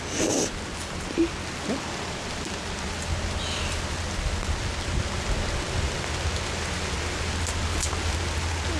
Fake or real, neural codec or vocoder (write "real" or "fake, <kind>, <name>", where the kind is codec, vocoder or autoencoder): real